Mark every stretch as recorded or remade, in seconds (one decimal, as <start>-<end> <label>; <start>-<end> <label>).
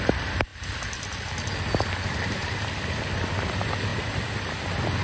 0.0-3.9 recorded; 3.9-4.6 remade; 4.6-5.0 recorded